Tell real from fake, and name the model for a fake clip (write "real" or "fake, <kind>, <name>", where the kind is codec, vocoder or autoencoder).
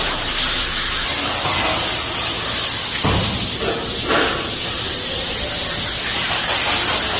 real